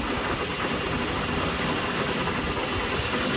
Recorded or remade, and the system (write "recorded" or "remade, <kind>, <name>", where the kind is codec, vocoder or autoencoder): recorded